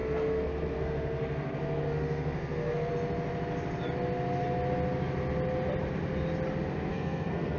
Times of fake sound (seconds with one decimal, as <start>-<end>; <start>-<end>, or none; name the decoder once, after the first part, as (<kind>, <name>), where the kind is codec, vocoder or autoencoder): 0.0-2.9 (codec, SNAC); 6.9-7.6